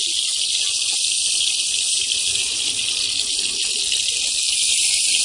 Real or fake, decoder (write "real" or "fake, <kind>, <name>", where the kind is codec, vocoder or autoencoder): real